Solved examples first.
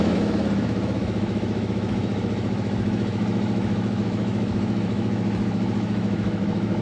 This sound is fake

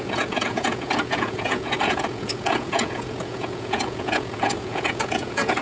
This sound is fake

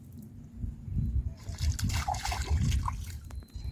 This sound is real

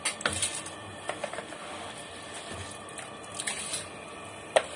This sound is real